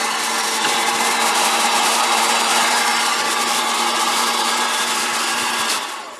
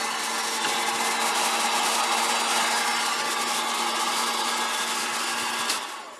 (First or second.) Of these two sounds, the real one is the second